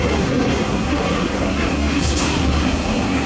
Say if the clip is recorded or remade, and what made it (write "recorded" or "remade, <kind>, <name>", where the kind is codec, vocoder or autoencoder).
remade, codec, SNAC